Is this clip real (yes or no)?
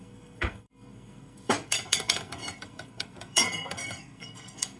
no